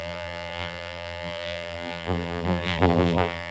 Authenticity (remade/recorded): remade